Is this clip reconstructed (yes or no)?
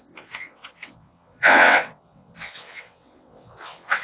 yes